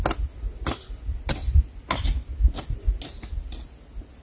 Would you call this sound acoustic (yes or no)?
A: yes